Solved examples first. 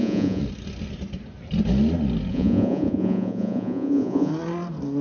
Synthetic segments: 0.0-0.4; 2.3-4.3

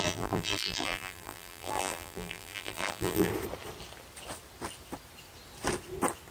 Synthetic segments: 0.0-3.3